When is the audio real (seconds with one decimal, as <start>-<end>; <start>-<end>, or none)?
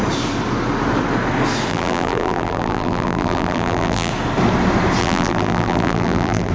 0.0-1.7; 4.1-5.0